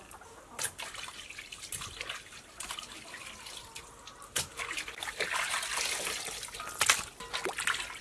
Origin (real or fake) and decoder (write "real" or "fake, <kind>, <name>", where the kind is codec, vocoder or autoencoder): real